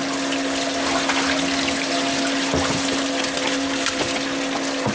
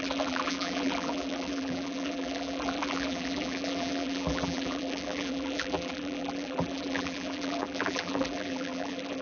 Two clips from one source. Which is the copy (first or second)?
second